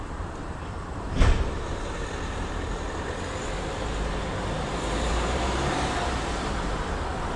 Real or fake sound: fake